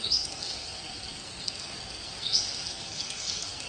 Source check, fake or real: fake